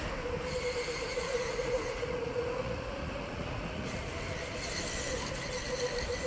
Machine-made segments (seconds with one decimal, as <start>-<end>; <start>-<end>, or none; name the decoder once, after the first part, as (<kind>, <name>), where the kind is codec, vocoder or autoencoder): 1.1-4.1 (vocoder, Vocos)